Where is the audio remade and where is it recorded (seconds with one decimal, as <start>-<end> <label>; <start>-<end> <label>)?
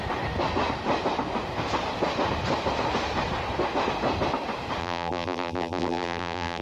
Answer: 0.0-4.8 recorded; 4.8-6.6 remade